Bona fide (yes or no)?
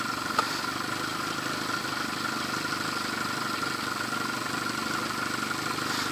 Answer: yes